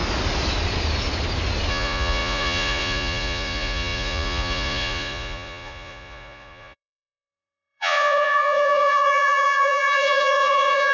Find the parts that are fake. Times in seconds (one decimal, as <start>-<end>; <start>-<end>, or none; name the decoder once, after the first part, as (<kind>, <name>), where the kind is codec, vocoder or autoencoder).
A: 1.7-10.9 (vocoder, Vocos)